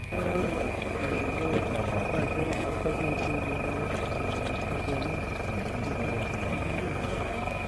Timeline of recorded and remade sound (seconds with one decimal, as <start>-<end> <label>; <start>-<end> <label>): 0.0-1.2 remade; 1.2-2.4 recorded; 2.4-3.0 remade; 3.0-6.5 recorded; 6.5-7.7 remade